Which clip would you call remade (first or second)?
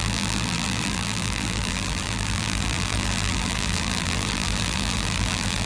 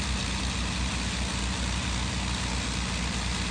first